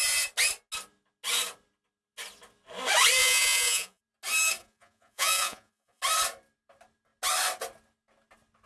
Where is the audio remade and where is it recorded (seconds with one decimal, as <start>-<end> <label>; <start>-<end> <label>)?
0.0-3.2 recorded; 3.2-4.0 remade; 4.0-4.6 recorded; 4.6-6.0 remade; 6.0-8.7 recorded